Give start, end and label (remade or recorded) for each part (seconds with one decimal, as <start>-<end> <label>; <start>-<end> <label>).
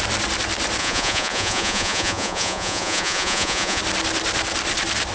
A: 0.0-0.8 recorded; 0.8-3.8 remade; 3.8-5.1 recorded